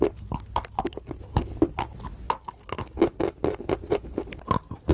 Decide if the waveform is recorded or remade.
recorded